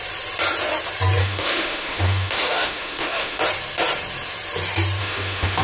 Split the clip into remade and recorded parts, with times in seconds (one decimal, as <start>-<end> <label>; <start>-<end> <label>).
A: 0.0-1.2 recorded; 1.2-3.4 remade; 3.4-5.0 recorded; 5.0-5.6 remade